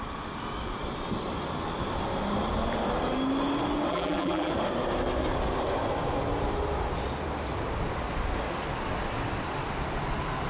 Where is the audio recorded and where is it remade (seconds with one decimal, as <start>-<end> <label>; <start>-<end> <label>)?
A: 0.0-3.9 recorded; 3.9-4.5 remade; 4.5-10.5 recorded